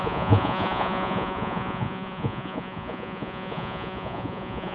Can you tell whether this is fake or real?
fake